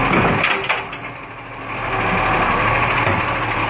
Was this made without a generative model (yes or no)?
yes